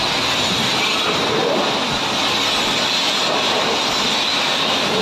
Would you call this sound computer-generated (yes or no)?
no